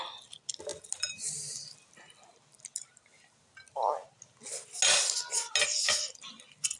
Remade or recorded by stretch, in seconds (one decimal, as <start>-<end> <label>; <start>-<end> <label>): 0.0-6.8 recorded

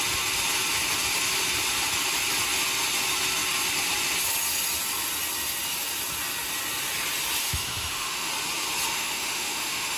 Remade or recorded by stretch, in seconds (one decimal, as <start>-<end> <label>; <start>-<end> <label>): 0.0-7.4 recorded; 7.4-8.3 remade; 8.3-8.9 recorded; 8.9-10.0 remade